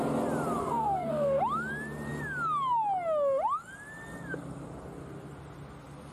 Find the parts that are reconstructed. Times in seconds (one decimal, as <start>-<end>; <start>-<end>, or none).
0.6-1.4